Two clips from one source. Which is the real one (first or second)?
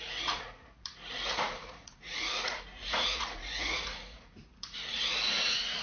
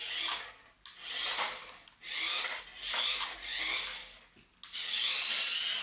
second